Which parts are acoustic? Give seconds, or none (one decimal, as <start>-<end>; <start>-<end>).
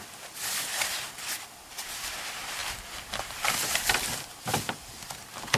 0.0-5.6